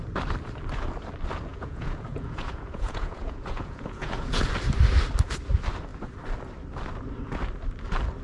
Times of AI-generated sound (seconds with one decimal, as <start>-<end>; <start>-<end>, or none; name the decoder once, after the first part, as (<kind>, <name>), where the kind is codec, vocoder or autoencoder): 1.5-4.5 (vocoder, Vocos)